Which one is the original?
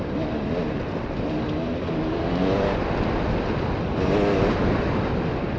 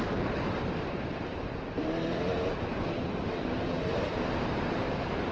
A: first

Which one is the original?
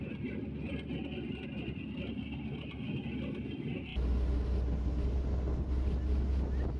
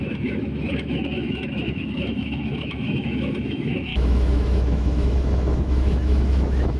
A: first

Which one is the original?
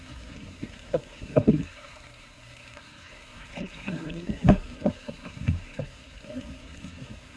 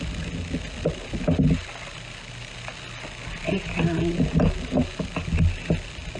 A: second